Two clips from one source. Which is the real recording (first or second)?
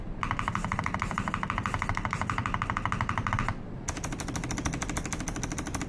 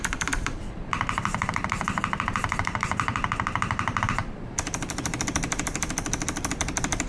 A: first